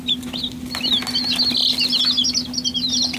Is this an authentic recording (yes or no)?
yes